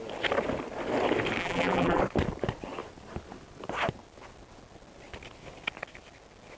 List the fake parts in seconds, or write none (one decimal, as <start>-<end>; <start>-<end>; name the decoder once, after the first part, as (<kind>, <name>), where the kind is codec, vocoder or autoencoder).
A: 1.4-2.0 (vocoder, BigVGAN v2)